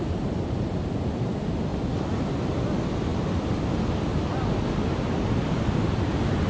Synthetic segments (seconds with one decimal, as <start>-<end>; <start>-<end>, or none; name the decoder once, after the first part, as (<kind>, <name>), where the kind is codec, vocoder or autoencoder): none